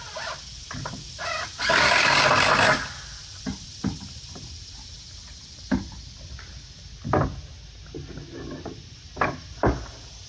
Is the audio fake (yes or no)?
no